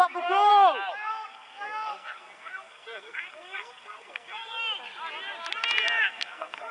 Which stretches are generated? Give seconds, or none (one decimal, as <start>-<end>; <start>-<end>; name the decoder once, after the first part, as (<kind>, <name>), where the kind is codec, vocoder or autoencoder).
0.0-0.5 (codec, SNAC); 1.1-4.6; 6.0-6.7